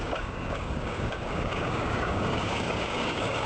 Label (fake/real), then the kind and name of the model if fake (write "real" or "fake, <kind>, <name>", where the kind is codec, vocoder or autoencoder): fake, codec, DAC